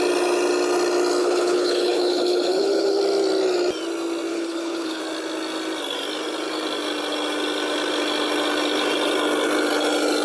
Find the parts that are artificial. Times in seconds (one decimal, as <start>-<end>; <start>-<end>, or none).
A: 1.2-3.0; 4.3-5.0